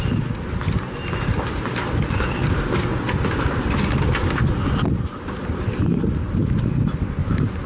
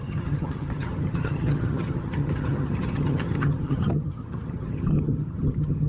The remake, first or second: second